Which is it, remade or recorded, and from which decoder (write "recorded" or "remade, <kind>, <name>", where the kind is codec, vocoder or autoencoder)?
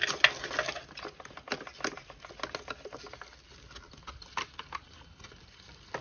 recorded